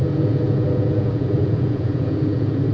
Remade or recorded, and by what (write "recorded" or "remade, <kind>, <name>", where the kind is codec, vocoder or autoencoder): remade, vocoder, Vocos